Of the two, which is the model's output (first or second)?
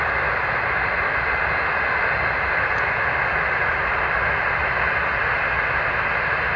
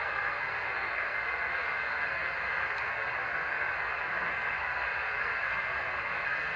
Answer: second